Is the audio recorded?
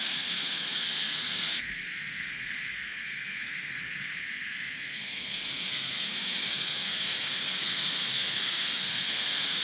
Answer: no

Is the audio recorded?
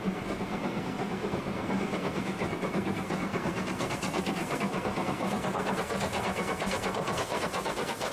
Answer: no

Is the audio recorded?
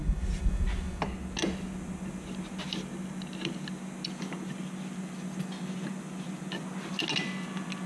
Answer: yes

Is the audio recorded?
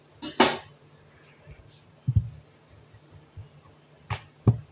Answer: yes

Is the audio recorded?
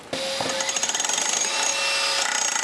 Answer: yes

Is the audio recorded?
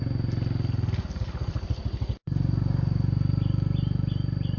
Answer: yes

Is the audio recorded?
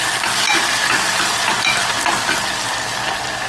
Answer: yes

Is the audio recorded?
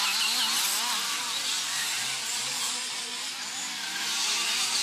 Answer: yes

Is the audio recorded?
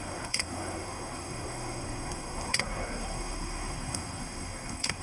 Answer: no